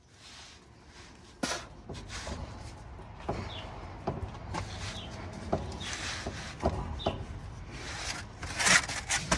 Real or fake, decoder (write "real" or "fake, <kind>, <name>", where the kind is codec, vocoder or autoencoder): real